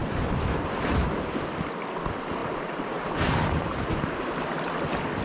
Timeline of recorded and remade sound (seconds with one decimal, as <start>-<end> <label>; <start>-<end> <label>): 0.0-2.4 recorded; 2.4-3.9 remade; 3.9-5.2 recorded